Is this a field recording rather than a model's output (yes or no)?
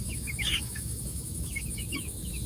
no